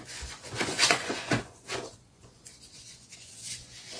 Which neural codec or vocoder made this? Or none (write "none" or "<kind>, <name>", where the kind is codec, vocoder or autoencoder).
vocoder, Vocos